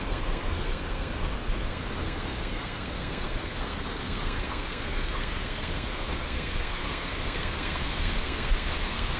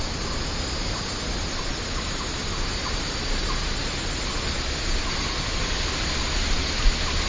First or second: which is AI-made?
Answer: first